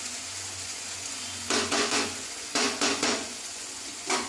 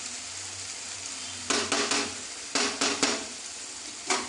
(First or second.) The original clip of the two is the second